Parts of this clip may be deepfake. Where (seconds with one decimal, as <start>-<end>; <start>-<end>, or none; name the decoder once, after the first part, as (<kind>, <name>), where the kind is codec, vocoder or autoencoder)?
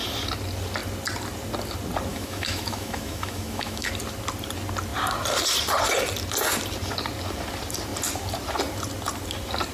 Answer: 2.1-3.9 (autoencoder, DAC-VAE)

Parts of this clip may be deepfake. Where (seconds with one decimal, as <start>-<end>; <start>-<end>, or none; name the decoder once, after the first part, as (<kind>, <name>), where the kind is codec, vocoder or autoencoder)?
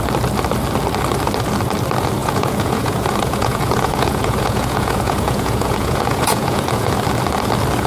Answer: 2.2-6.9 (vocoder, Vocos)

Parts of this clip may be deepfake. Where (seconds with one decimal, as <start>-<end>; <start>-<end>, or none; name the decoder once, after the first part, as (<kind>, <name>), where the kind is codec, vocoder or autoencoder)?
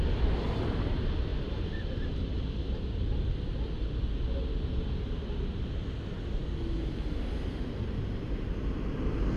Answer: none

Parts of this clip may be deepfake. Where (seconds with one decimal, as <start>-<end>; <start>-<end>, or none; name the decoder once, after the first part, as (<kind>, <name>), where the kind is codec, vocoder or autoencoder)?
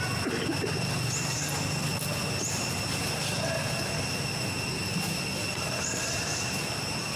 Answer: none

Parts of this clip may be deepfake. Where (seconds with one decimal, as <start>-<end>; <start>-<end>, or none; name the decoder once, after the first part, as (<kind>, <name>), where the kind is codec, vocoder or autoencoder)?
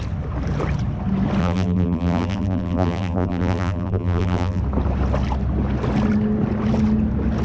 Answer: 1.4-4.6 (vocoder, BigVGAN v2)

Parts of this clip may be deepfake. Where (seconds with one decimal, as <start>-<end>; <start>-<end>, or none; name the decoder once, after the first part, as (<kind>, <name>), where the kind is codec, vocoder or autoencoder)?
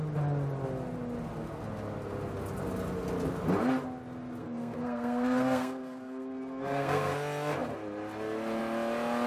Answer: 4.4-7.1 (codec, SNAC)